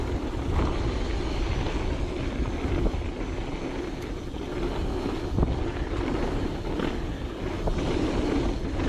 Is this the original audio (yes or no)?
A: yes